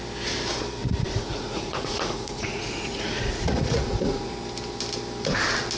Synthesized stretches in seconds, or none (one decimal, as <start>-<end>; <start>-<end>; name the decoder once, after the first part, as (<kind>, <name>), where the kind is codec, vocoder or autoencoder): 0.8-4.3 (vocoder, Vocos)